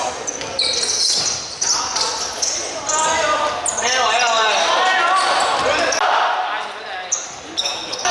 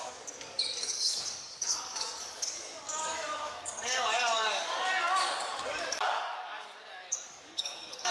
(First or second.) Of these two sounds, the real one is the first